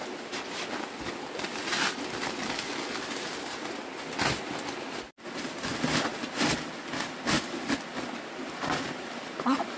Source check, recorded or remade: recorded